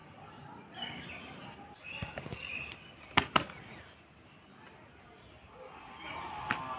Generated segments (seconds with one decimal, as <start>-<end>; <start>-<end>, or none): none